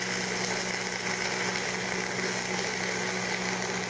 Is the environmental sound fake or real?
real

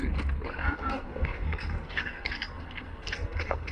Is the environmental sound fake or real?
fake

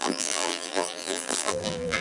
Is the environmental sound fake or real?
fake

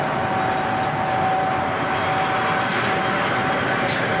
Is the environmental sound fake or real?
real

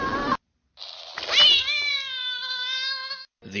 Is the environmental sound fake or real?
real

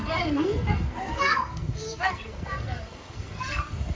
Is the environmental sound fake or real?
fake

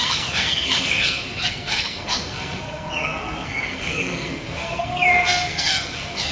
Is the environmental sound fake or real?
fake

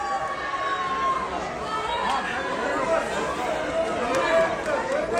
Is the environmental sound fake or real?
real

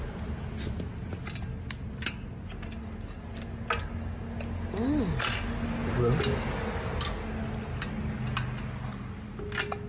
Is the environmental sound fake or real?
real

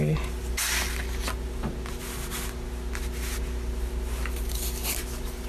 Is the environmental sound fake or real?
real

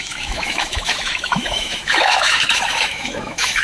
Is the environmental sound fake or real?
fake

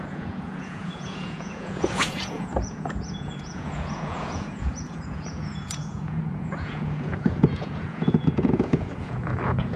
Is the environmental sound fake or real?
fake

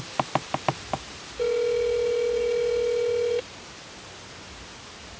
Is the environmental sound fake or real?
real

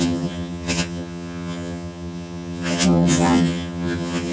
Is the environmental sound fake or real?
fake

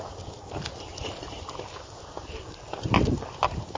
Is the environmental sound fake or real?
real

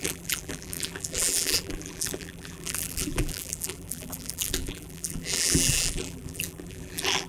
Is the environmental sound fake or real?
fake